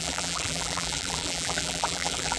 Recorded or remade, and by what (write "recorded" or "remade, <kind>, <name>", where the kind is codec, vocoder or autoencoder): remade, vocoder, BigVGAN v2